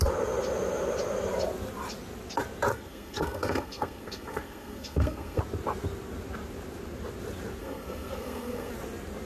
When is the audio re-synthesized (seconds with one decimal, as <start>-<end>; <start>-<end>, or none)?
2.7-5.4; 7.6-8.7